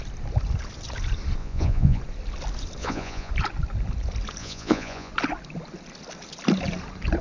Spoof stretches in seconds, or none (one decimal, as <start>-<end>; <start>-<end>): 1.4-2.0; 2.8-3.3; 4.4-5.1